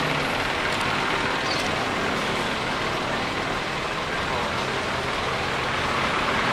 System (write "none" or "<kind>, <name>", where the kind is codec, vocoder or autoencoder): none